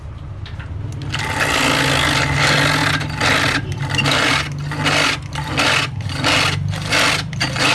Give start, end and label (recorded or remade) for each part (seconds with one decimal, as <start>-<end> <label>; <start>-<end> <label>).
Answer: 0.0-7.7 recorded